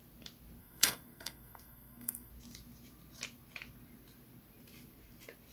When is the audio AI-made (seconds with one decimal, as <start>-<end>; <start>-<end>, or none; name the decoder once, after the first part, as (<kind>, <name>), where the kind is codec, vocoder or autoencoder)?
0.6-2.3 (codec, SNAC)